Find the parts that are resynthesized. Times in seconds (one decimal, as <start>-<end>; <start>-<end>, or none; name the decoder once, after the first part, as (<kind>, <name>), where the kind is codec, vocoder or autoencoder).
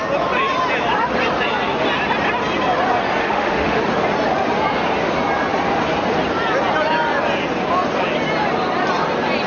3.2-3.8 (autoencoder, DAC-VAE)